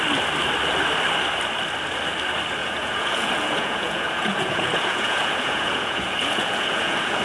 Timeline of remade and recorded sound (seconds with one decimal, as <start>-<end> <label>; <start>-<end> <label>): 0.0-2.6 recorded; 2.6-7.2 remade